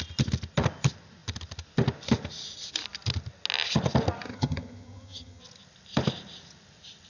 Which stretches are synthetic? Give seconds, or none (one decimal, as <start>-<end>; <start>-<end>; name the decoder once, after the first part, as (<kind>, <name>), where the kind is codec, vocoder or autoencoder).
4.3-5.4 (vocoder, HiFi-GAN)